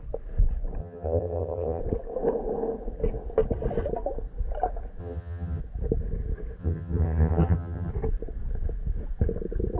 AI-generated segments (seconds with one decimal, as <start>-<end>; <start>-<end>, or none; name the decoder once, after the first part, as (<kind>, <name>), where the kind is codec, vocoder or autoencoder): 0.8-1.8 (vocoder, HiFi-GAN); 5.0-5.6; 6.6-7.9